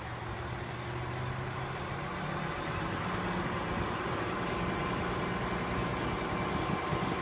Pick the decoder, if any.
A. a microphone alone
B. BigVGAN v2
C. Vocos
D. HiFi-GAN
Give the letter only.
A